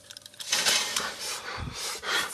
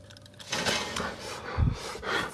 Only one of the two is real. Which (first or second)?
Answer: second